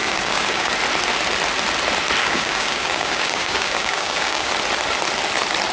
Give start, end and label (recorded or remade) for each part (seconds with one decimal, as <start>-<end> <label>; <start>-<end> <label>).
0.0-0.7 remade; 0.7-2.2 recorded; 2.2-4.5 remade; 4.5-5.7 recorded